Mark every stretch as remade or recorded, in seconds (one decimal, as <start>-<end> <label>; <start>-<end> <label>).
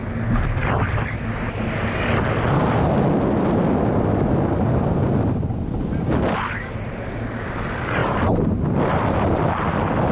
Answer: 0.0-10.1 recorded